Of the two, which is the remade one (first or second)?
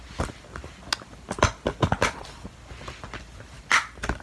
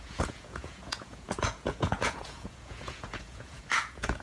second